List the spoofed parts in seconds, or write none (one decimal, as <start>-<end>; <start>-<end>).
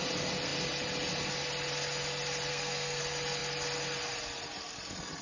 2.5-3.0